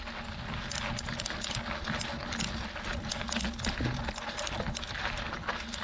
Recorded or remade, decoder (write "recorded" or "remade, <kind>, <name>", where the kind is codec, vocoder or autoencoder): recorded